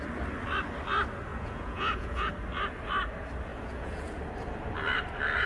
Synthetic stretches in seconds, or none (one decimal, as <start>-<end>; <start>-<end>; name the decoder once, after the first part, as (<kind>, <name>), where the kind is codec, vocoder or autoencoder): 1.3-2.3 (vocoder, Vocos); 3.5-4.2